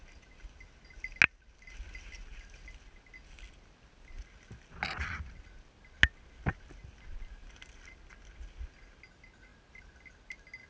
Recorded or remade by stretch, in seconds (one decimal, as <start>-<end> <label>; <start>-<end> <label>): 0.0-10.7 recorded